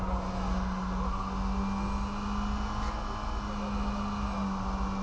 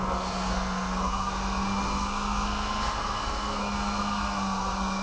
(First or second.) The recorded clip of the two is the first